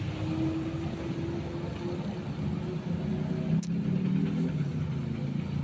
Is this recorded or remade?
recorded